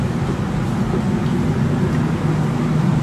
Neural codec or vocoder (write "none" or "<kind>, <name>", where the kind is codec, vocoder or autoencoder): none